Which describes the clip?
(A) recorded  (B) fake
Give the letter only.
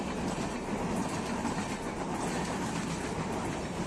A